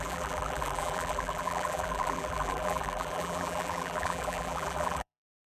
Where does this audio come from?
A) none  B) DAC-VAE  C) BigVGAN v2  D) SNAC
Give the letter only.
C